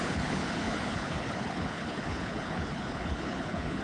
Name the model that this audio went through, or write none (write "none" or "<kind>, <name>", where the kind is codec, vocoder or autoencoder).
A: codec, HILCodec